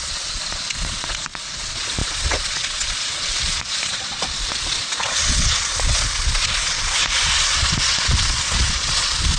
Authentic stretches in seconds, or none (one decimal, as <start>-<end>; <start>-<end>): none